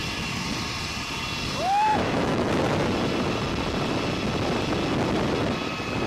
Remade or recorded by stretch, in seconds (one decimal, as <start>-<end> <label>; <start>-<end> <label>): 0.0-1.9 recorded; 1.9-2.5 remade; 2.5-6.1 recorded